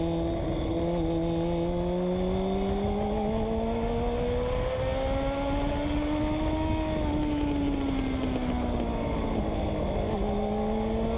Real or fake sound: real